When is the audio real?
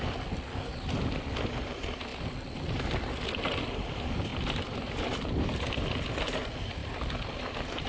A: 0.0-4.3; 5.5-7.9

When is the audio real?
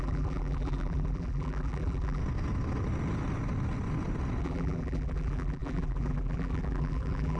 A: 2.2-4.4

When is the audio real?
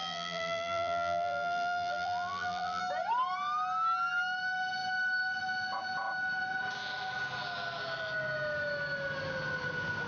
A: 2.8-10.1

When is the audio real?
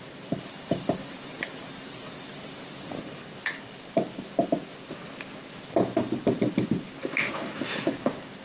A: 2.3-3.4; 4.1-7.3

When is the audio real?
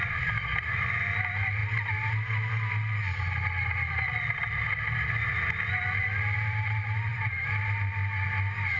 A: 0.0-7.1; 7.9-8.8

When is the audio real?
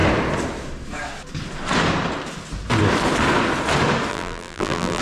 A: 0.0-4.1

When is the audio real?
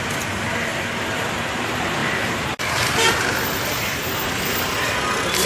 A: 0.0-5.5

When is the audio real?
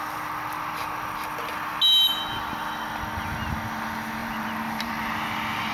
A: 0.0-4.2; 5.1-5.7